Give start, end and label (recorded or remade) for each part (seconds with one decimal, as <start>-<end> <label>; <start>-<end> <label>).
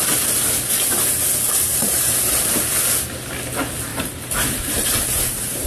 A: 0.0-1.7 recorded; 1.7-2.3 remade; 2.3-3.9 recorded; 3.9-5.7 remade